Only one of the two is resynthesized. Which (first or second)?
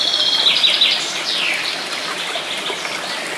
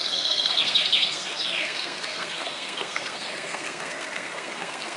second